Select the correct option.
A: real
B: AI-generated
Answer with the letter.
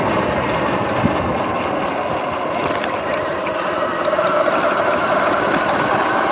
A